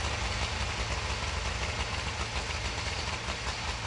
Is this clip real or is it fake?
real